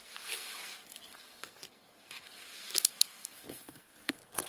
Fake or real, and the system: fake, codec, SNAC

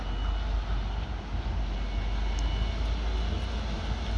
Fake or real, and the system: real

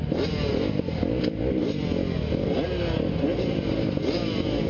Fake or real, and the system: real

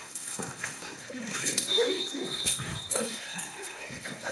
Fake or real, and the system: fake, codec, SNAC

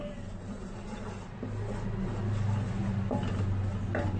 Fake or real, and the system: real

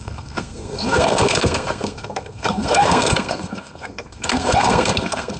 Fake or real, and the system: fake, codec, SNAC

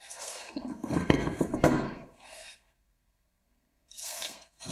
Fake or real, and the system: fake, codec, SNAC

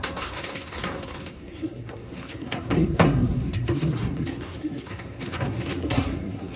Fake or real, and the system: fake, codec, SNAC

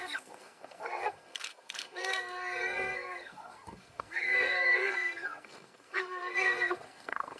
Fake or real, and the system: fake, codec, SNAC